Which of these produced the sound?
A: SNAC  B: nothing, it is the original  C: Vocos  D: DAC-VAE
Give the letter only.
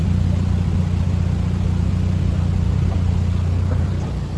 B